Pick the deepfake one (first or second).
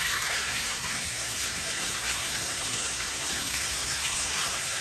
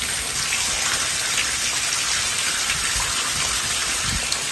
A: first